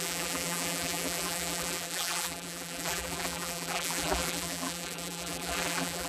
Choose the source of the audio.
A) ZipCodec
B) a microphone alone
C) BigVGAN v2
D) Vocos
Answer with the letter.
C